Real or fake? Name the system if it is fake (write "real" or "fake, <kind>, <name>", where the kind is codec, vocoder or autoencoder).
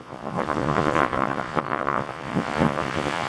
fake, vocoder, Vocos